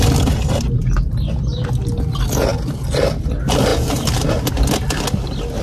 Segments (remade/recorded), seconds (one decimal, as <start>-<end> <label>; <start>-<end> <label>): 0.0-5.6 recorded